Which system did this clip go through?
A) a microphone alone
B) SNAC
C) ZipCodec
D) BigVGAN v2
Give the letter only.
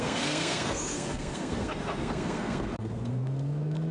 B